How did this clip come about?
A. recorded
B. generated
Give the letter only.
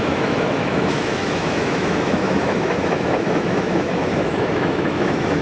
B